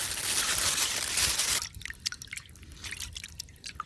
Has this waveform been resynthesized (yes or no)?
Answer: no